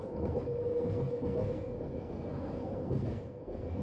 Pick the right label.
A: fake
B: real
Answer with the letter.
A